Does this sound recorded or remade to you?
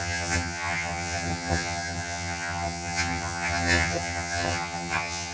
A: remade